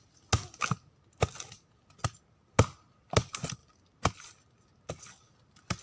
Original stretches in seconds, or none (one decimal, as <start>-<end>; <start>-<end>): 0.0-5.8